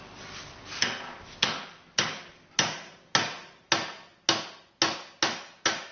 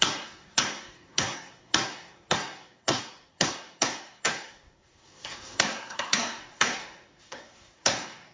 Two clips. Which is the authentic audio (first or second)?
first